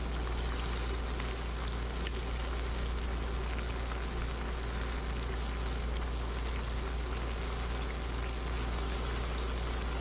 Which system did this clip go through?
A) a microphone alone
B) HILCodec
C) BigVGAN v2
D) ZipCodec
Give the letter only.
A